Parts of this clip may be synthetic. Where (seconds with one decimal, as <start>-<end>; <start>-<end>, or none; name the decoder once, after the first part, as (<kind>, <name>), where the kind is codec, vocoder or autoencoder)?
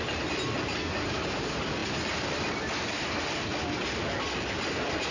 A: none